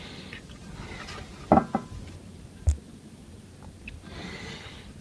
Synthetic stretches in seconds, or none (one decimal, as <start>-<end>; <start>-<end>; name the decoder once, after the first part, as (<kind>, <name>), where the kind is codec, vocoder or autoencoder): none